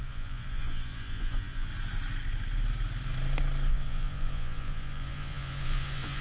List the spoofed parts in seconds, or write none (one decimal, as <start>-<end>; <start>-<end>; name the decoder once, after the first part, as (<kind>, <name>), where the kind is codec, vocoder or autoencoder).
0.0-1.7 (vocoder, Vocos); 3.7-6.2